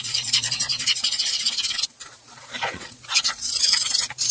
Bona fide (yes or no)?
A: no